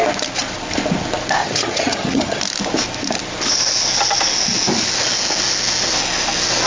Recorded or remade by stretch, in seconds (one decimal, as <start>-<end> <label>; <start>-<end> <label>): 0.0-1.4 recorded; 1.4-2.4 remade; 2.4-6.7 recorded